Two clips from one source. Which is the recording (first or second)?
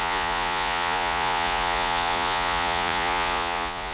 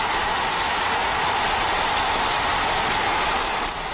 second